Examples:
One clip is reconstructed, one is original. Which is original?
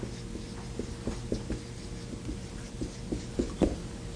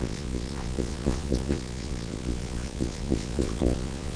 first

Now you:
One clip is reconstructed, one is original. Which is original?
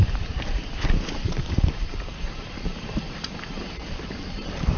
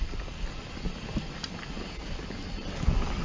second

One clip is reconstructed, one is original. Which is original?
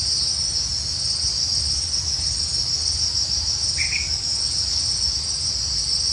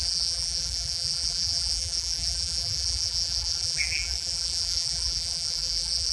first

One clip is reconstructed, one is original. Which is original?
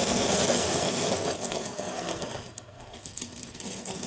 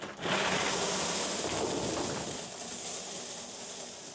second